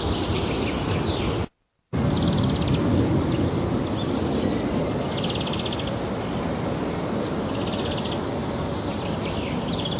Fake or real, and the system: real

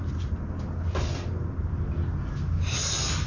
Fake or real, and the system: real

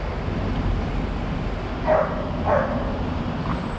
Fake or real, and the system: real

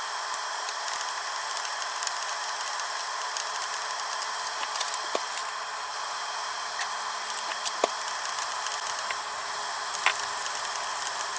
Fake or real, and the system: real